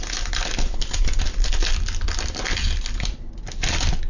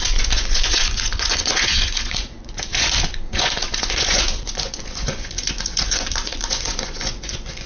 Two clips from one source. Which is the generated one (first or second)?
second